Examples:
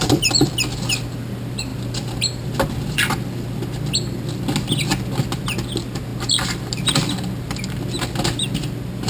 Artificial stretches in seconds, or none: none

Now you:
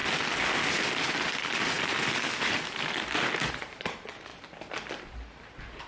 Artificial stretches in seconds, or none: 3.5-4.3 (vocoder, BigVGAN v2)